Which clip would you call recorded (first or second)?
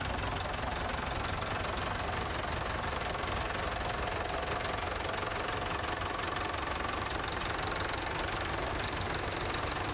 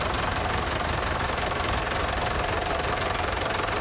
first